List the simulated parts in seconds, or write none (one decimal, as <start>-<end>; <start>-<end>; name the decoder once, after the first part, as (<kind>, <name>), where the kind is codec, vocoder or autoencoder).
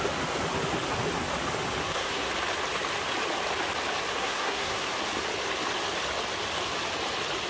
1.8-2.3 (codec, SNAC); 4.1-4.9